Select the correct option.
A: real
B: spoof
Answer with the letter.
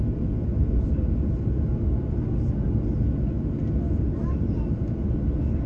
A